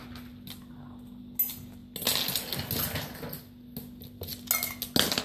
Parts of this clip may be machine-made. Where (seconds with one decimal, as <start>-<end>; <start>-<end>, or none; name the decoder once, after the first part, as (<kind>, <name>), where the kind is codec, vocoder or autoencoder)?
none